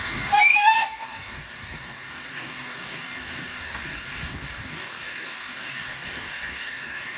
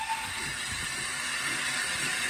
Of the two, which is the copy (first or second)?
first